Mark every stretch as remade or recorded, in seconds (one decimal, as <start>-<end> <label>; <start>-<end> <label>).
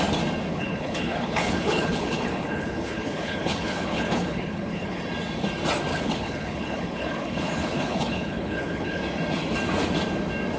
0.0-0.5 recorded; 0.5-5.0 remade; 5.0-5.9 recorded; 5.9-9.0 remade; 9.0-10.6 recorded